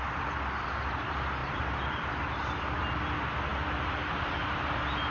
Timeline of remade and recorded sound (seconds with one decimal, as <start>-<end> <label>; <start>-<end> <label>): 0.0-5.1 recorded